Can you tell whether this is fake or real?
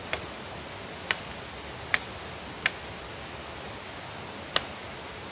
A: real